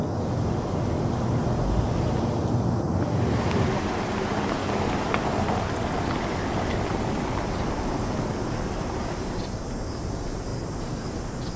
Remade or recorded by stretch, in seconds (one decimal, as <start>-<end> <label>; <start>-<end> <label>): 0.0-10.5 recorded; 10.5-11.2 remade; 11.2-11.6 recorded